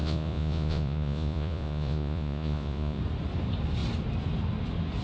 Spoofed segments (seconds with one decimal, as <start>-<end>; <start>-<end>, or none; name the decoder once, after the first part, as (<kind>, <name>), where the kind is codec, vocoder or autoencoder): 0.0-3.0 (vocoder, Vocos)